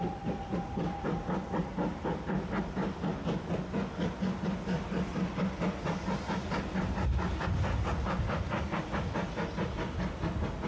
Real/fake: real